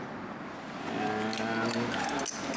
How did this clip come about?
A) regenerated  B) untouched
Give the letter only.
B